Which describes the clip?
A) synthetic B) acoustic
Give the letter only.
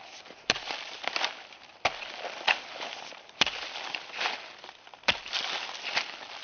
B